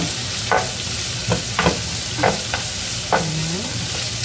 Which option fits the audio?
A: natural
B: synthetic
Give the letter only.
A